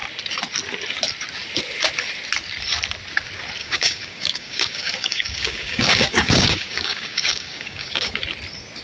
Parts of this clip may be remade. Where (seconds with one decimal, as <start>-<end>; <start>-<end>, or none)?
3.6-8.2